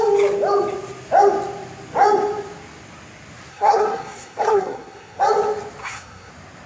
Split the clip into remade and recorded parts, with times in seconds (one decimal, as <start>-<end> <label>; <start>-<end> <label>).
0.0-3.5 recorded; 3.5-5.2 remade; 5.2-5.8 recorded; 5.8-6.3 remade; 6.3-6.7 recorded